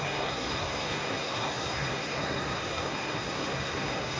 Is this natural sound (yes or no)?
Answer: no